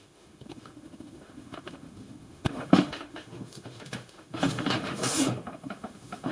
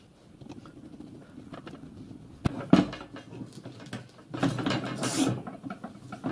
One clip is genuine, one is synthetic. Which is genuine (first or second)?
second